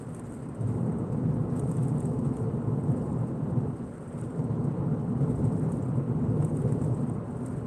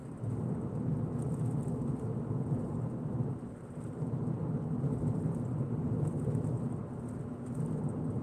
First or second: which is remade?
first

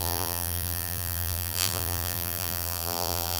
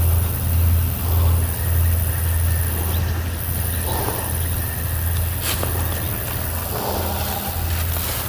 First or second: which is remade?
first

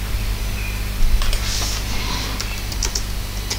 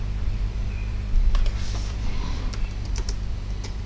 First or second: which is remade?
second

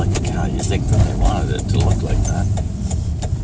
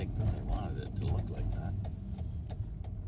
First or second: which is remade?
first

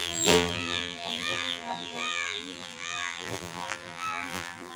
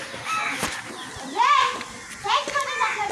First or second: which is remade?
first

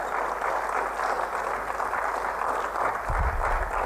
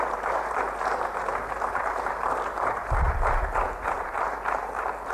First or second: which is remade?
second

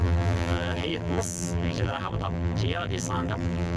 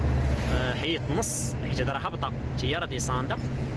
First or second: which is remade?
first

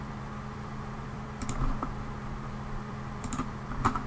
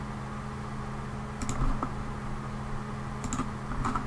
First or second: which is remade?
first